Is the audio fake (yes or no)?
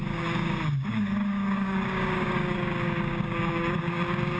yes